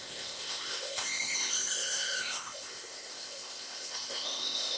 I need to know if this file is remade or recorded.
remade